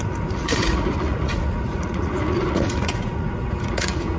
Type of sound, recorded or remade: remade